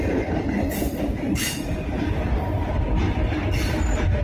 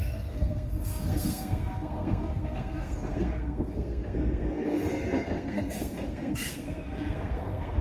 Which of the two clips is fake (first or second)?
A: second